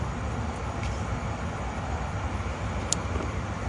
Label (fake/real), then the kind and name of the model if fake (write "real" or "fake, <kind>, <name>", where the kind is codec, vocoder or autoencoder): real